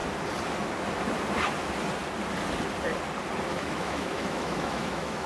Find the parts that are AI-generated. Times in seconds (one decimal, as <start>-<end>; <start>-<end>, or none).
3.5-5.3